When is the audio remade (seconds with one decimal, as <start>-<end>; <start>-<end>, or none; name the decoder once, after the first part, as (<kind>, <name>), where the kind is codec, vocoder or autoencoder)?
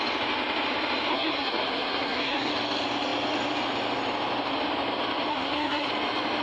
1.1-2.5 (codec, SNAC); 5.3-5.9